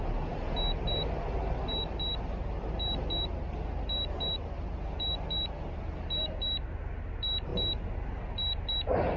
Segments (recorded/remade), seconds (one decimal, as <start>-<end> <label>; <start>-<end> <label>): 0.0-9.2 recorded